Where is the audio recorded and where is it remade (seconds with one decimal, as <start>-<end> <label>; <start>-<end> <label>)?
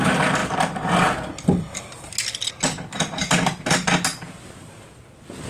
0.0-5.5 recorded